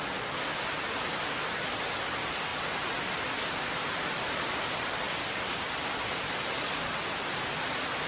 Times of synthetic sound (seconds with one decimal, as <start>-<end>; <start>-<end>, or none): none